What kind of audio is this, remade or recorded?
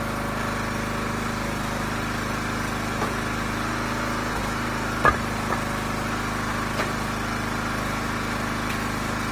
recorded